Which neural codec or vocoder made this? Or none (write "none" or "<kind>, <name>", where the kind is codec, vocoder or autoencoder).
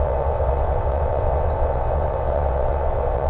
vocoder, WaveNeXt